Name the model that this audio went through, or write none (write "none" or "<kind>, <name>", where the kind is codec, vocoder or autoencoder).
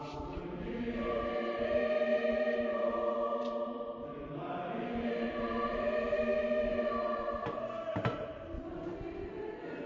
none